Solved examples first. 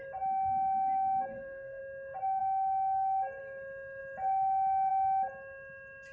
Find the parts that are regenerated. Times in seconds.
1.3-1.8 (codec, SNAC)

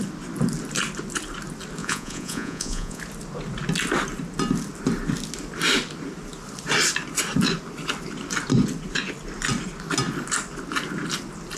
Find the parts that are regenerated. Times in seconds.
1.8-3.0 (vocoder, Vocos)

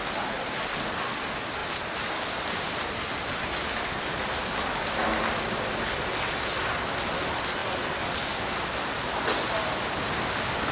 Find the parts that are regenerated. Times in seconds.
none

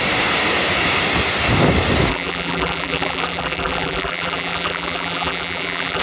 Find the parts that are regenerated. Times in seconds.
2.1-6.0 (vocoder, BigVGAN v2)

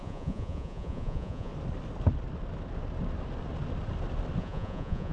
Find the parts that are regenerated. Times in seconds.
0.0-1.5 (vocoder, Vocos); 4.4-5.1

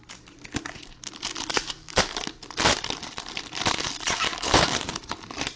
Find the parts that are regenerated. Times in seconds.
1.5-2.2 (codec, DAC); 4.3-4.9